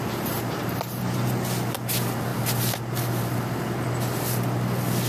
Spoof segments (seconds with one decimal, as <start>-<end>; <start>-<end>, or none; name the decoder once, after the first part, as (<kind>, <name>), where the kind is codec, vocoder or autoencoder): none